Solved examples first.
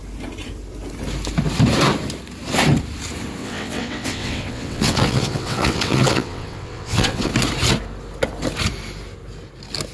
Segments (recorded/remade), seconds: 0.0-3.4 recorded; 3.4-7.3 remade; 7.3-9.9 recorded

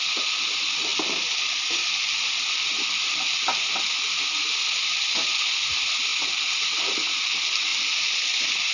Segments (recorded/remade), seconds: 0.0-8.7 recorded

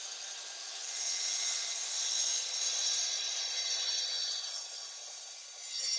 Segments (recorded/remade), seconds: 0.0-0.6 recorded; 0.6-1.5 remade; 1.5-6.0 recorded

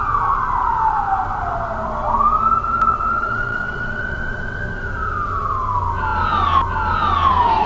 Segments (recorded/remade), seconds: 0.0-2.9 recorded; 2.9-4.6 remade; 4.6-7.7 recorded

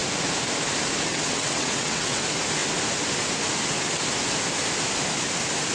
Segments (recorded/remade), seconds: 0.0-1.1 recorded; 1.1-2.2 remade; 2.2-5.7 recorded

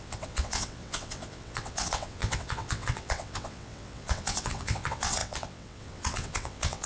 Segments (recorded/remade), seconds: 0.0-6.9 remade

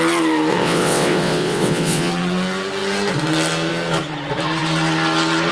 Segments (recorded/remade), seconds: 0.0-0.5 recorded; 0.5-2.1 remade; 2.1-5.5 recorded